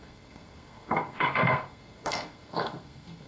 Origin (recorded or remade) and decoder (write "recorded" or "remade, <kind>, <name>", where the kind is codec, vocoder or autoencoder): remade, codec, SNAC